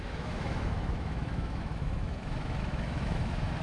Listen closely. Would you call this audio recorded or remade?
remade